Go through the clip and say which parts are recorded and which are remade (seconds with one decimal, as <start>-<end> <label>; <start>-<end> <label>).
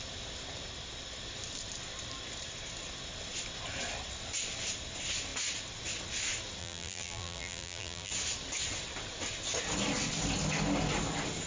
0.0-6.6 recorded; 6.6-8.1 remade; 8.1-11.5 recorded